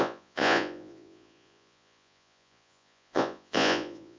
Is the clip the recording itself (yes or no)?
no